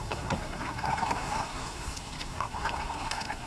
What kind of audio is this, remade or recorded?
remade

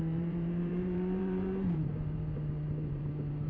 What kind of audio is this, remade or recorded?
remade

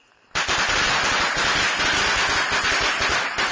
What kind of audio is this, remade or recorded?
recorded